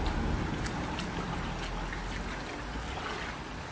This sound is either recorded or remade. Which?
recorded